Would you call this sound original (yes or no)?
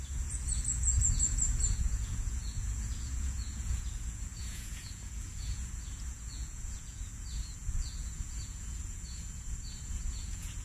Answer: no